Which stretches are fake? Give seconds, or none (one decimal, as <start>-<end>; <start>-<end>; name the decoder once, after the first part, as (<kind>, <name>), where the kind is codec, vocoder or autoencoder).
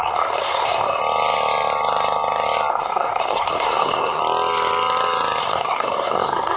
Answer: 0.0-1.0 (codec, SNAC); 2.7-4.2; 5.4-6.6